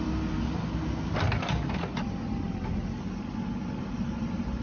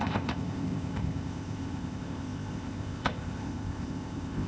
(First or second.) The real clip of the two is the first